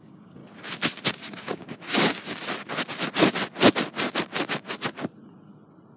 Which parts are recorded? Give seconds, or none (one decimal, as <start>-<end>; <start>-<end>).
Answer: 0.4-1.1; 2.4-6.0